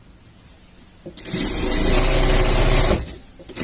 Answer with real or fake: real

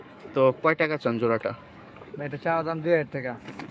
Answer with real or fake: fake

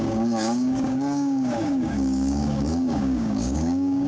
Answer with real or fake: fake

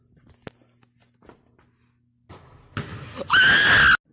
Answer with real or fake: real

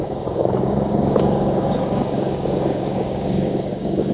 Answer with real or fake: fake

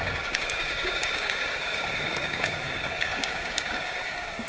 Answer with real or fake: fake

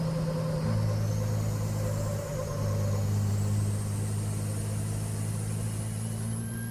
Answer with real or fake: real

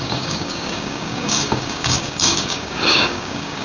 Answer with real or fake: fake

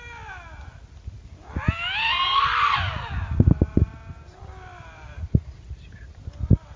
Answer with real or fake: real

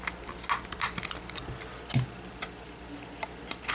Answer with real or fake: real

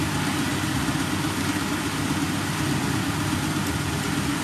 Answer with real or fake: real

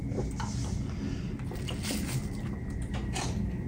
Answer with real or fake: real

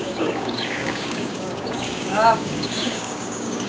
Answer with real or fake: fake